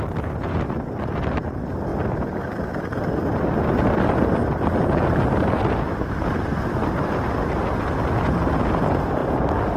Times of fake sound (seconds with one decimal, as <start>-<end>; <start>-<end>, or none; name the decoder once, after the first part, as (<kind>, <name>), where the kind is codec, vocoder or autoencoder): none